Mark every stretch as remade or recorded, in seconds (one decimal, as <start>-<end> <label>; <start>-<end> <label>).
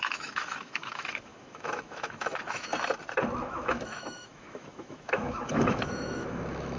0.0-2.7 remade; 2.7-3.4 recorded; 3.4-6.8 remade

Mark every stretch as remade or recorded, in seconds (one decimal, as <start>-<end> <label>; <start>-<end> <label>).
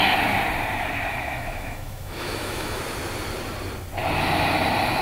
0.0-1.1 recorded; 1.1-2.8 remade; 2.8-5.0 recorded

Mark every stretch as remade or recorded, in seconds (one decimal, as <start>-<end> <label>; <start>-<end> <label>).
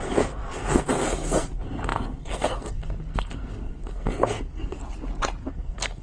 0.0-4.8 remade; 4.8-5.5 recorded; 5.5-6.0 remade